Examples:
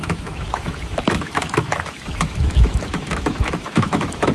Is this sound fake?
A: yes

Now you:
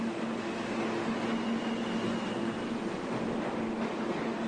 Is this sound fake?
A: no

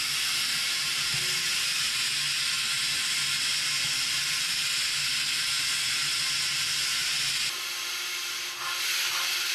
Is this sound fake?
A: no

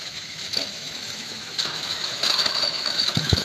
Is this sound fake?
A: yes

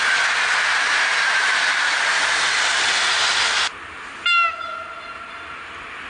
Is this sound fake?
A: no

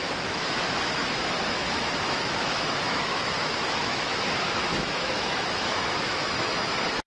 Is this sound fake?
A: yes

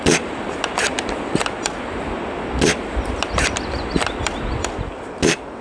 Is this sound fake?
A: no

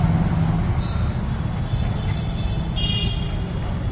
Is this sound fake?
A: no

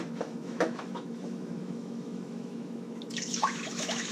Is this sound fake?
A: yes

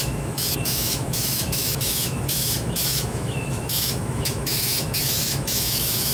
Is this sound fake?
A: yes